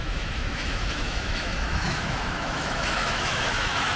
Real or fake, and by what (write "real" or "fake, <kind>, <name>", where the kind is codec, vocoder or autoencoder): fake, autoencoder, DAC-VAE